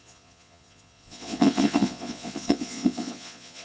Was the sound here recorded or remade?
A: remade